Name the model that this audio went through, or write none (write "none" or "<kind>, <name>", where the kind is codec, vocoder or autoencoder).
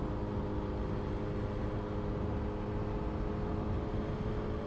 none